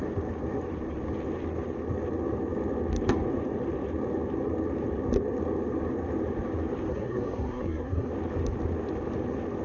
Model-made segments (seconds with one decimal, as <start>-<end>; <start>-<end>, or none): 6.9-8.1